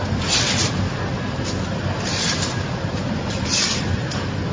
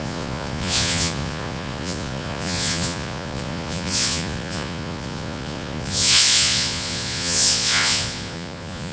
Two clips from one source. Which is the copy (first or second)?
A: second